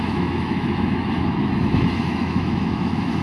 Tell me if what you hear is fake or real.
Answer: fake